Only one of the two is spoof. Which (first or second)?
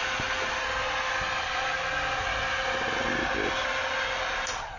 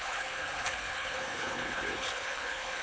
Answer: second